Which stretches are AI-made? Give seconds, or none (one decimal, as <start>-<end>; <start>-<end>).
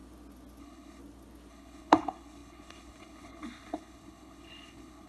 0.6-1.0; 1.5-5.1